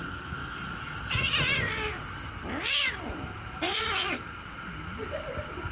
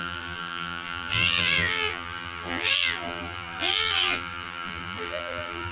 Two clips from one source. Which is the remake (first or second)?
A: second